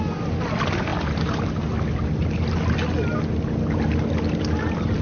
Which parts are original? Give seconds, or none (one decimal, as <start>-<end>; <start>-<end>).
0.0-5.0